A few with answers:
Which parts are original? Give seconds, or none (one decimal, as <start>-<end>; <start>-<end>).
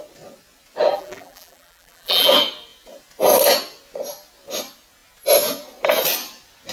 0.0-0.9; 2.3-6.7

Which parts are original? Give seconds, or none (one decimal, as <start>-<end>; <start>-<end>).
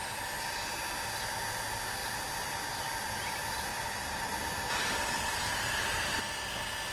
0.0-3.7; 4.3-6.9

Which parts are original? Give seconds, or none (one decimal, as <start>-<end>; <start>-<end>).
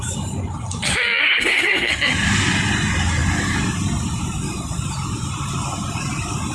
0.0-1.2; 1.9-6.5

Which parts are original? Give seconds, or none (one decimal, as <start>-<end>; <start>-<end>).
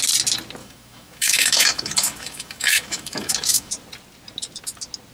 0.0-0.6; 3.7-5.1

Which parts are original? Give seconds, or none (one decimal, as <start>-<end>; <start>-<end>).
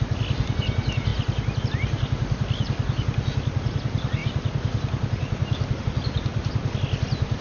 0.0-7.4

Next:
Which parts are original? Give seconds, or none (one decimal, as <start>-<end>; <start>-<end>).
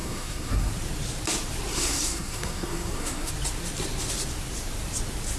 0.7-1.7; 3.3-5.4